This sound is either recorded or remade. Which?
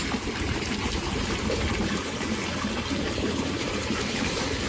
remade